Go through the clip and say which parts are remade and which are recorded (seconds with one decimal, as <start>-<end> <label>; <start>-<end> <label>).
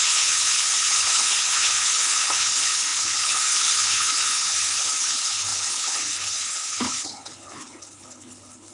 0.0-8.7 remade